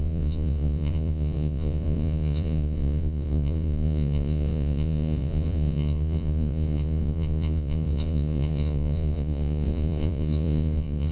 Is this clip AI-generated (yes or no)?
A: yes